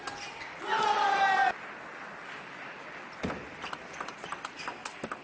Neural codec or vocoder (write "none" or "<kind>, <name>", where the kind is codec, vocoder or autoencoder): none